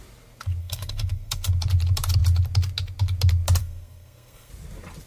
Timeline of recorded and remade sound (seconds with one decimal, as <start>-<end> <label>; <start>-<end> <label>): 0.0-0.6 recorded; 0.6-1.5 remade; 1.5-3.6 recorded; 3.6-4.5 remade; 4.5-5.1 recorded